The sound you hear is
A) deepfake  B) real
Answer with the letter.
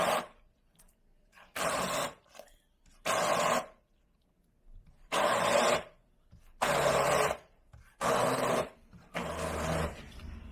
B